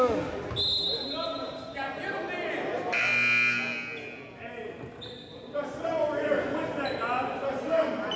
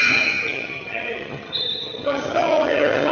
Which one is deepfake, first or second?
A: second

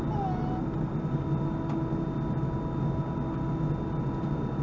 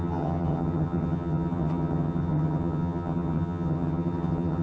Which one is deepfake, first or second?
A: second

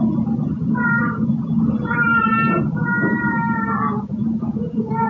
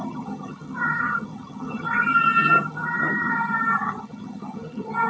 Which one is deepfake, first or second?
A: second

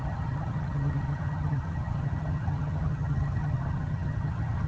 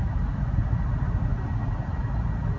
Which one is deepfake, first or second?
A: first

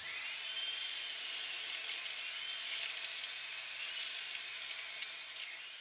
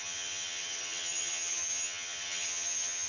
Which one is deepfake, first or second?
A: second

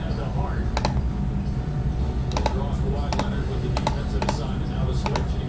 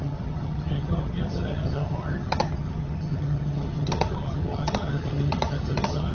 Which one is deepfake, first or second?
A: second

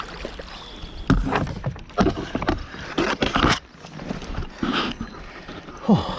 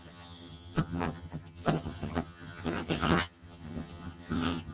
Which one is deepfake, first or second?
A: second